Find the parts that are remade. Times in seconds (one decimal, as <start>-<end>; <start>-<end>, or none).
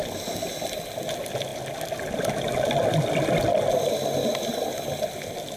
none